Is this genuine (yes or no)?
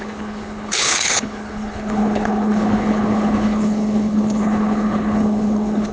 no